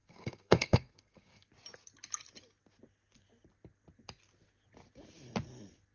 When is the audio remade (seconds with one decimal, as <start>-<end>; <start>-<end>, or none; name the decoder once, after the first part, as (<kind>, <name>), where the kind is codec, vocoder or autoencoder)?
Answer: 0.0-1.5 (codec, SNAC)